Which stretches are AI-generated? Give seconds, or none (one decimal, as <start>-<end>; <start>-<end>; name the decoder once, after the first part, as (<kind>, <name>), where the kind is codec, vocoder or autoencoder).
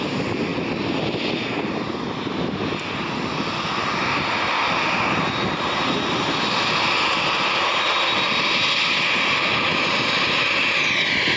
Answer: none